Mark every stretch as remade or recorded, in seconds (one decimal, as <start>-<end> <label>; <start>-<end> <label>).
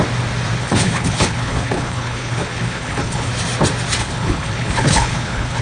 0.0-0.6 recorded; 0.6-3.3 remade; 3.3-4.0 recorded; 4.0-5.6 remade